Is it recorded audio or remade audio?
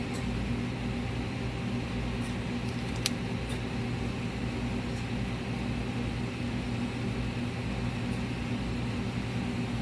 recorded